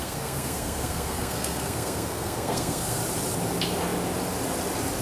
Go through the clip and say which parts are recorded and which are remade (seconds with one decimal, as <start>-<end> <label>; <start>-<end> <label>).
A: 0.0-3.0 remade; 3.0-5.0 recorded